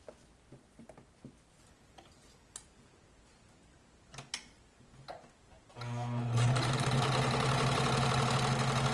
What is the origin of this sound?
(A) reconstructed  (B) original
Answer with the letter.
B